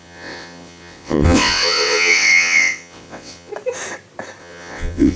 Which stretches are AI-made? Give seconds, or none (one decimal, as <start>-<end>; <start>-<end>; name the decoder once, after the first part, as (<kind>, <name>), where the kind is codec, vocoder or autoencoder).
0.0-3.5 (vocoder, WaveNeXt); 4.4-5.2